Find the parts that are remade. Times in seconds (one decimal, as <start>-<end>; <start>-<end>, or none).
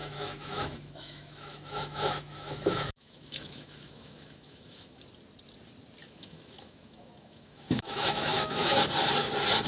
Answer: 0.0-5.0; 6.0-8.8